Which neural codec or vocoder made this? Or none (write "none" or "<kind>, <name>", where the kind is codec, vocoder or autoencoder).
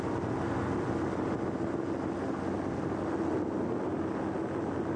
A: none